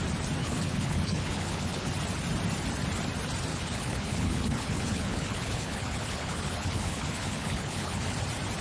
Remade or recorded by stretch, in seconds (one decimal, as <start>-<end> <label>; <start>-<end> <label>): 0.0-0.4 recorded; 0.4-1.9 remade; 1.9-3.5 recorded; 3.5-8.2 remade; 8.2-8.6 recorded